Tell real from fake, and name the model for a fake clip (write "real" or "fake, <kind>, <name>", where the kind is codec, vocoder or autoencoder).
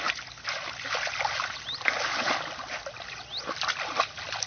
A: real